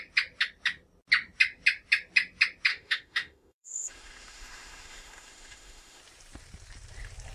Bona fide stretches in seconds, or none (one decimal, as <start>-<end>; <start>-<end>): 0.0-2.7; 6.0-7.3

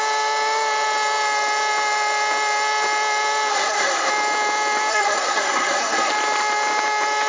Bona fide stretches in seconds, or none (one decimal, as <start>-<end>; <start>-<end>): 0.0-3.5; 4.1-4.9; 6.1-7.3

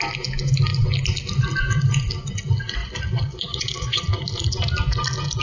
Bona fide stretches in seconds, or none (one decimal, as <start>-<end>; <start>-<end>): 0.0-2.8; 4.0-5.4

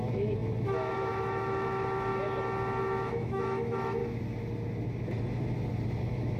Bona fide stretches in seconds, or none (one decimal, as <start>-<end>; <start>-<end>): 2.1-2.8; 4.0-6.0

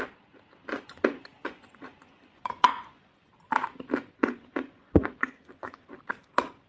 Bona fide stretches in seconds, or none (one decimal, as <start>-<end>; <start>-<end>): 0.0-0.7; 3.3-4.2; 6.0-6.7